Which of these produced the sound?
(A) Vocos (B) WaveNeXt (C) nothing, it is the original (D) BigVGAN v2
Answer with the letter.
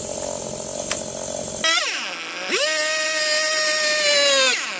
C